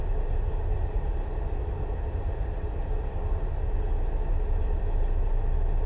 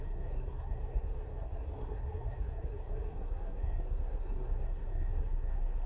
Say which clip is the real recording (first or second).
first